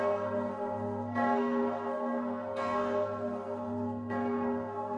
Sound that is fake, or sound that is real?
fake